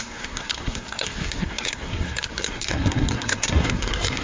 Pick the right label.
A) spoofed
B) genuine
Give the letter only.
A